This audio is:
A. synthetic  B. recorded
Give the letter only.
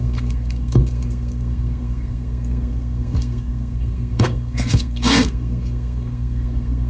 A